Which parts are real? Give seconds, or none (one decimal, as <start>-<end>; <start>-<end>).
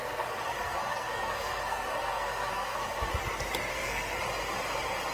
3.1-3.7; 4.2-5.1